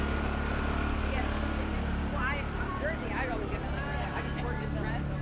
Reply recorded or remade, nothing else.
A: recorded